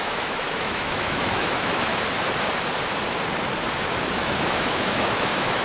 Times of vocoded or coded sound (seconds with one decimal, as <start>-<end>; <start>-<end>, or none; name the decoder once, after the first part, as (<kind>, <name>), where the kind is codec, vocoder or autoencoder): 0.0-1.9 (autoencoder, DAC-VAE); 4.1-5.6